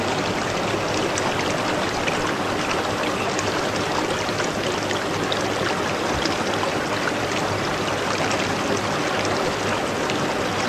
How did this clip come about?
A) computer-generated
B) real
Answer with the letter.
B